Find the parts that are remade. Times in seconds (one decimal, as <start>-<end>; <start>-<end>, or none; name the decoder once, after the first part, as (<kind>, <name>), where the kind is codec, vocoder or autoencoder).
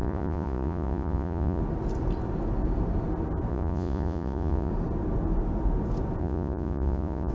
0.0-1.6 (vocoder, Vocos); 3.5-4.7; 6.2-7.3